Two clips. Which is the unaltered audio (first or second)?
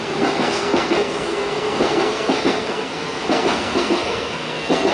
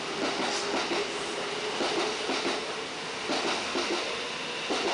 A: second